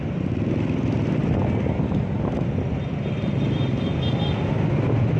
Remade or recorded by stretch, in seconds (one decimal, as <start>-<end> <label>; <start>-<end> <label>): 0.0-5.2 recorded